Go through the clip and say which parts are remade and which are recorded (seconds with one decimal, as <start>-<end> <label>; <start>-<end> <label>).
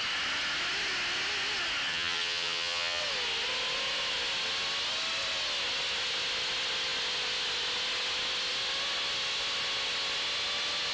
0.0-1.9 recorded; 1.9-3.0 remade; 3.0-10.9 recorded